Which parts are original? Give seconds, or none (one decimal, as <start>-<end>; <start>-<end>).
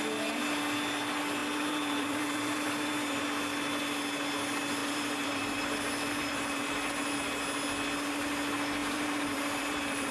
0.0-1.4; 3.2-4.8; 7.2-8.8